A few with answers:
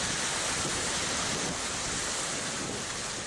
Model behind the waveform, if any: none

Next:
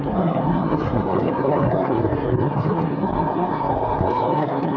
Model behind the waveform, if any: codec, SNAC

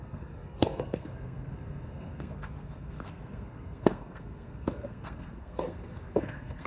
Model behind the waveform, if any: codec, SNAC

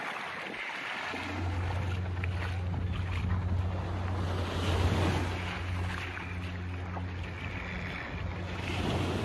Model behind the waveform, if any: none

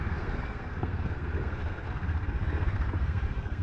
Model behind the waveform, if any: codec, SNAC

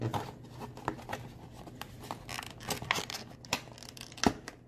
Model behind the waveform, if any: none